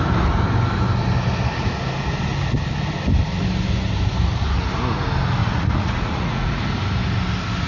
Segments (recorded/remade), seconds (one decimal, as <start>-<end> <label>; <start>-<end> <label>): 0.0-5.4 recorded; 5.4-6.6 remade; 6.6-7.7 recorded